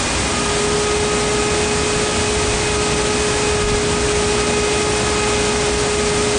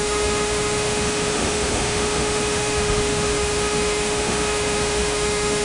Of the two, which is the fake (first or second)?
second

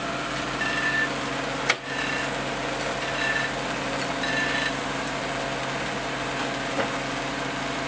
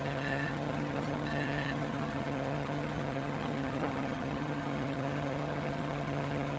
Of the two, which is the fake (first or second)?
second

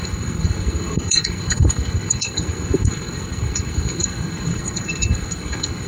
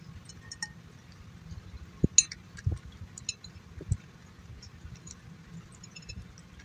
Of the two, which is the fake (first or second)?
first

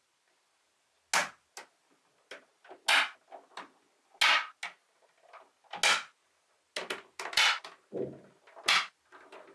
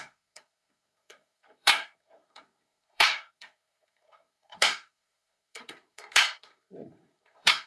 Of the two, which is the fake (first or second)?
second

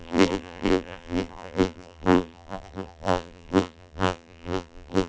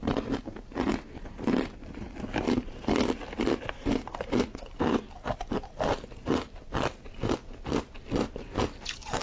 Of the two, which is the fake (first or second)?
first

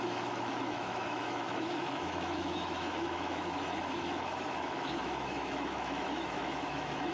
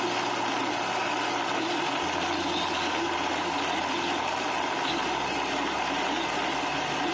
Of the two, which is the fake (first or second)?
first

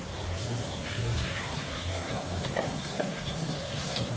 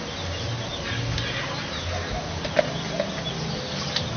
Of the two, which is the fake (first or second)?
first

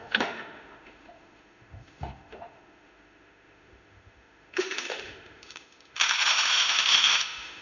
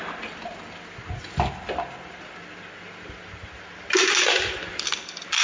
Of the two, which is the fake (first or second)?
first